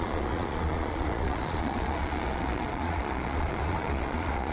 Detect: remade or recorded remade